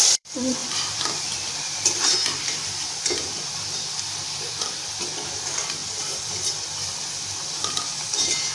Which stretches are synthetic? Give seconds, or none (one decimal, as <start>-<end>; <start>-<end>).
0.0-8.5